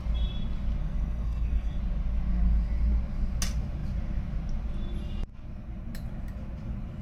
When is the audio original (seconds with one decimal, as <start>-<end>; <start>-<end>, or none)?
0.0-0.8; 1.8-7.0

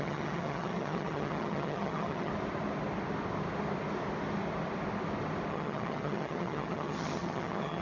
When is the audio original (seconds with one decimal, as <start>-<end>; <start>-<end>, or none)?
2.3-5.5

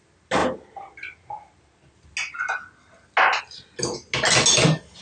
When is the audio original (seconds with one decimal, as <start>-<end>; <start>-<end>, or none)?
0.0-5.0

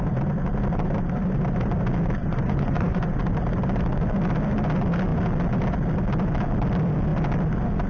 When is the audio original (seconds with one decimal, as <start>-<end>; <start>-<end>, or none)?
0.0-2.2; 3.2-7.9